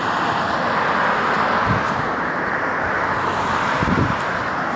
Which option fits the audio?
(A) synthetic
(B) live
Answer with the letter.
B